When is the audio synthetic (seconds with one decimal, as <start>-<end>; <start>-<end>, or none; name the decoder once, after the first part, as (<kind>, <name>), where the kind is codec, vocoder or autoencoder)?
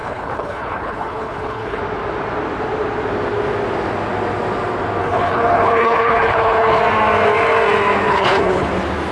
0.0-1.8 (codec, HILCodec); 5.0-6.8; 8.1-8.7